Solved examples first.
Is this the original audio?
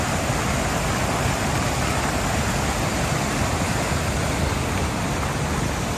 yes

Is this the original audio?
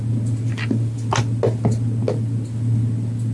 yes